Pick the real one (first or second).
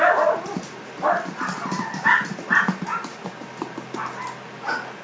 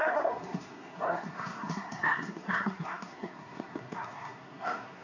first